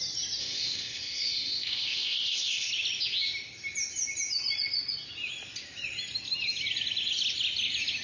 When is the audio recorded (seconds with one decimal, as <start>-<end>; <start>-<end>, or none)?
0.0-0.4; 2.7-8.0